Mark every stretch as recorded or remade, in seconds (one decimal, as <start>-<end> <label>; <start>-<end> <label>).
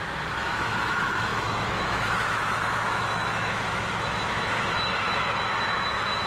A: 0.0-6.3 remade